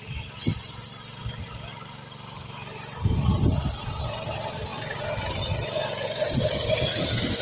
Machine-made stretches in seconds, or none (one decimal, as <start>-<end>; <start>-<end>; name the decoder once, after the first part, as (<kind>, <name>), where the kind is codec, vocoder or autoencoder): none